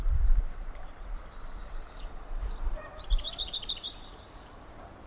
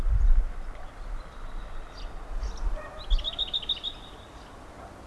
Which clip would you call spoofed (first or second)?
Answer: first